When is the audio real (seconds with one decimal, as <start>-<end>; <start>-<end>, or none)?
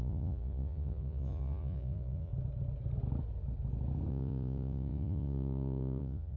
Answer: 2.3-4.1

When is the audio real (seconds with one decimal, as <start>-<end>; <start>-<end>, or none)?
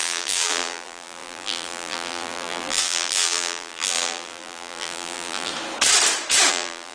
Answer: 5.5-6.5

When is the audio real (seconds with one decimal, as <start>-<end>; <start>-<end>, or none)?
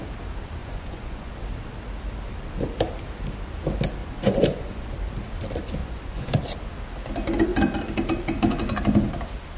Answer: 0.0-0.6; 1.3-4.0; 4.9-5.8; 6.4-9.6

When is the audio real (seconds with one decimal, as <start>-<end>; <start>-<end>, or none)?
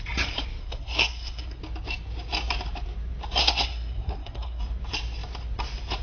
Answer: 0.0-0.6; 1.6-3.4; 4.6-6.0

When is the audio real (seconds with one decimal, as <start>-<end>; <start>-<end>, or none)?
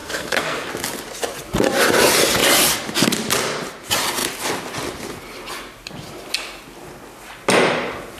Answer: 0.7-8.2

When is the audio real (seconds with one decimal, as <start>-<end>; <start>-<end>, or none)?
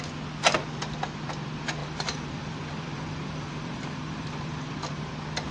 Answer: 0.0-1.8; 5.1-5.5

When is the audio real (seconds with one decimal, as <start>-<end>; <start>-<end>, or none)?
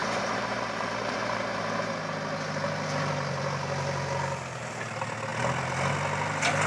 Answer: 1.6-6.7